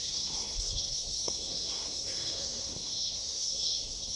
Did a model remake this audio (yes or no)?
yes